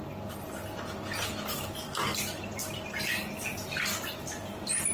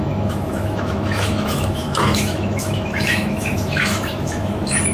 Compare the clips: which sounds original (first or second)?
first